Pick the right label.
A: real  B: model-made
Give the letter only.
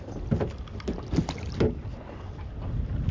A